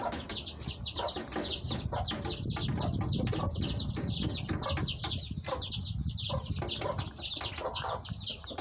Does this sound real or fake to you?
real